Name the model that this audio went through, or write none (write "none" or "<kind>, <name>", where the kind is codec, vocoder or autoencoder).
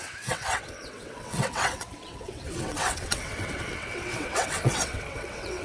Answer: vocoder, WaveNeXt